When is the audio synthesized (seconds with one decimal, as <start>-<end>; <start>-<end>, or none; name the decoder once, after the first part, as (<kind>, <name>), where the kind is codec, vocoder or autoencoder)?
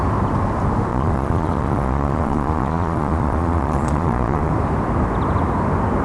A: 0.9-4.5 (vocoder, Vocos)